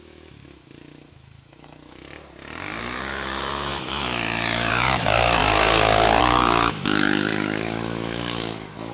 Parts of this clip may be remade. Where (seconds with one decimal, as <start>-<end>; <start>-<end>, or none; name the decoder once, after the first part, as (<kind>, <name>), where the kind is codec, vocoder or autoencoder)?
0.0-2.0 (autoencoder, DAC-VAE); 2.8-5.4; 6.2-8.9